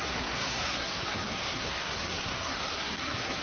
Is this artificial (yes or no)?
yes